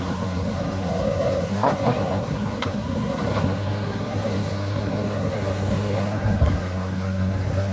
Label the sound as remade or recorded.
remade